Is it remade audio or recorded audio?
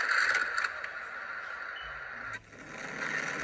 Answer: recorded